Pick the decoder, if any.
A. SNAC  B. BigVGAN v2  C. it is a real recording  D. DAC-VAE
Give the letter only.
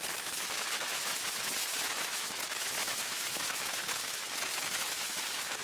D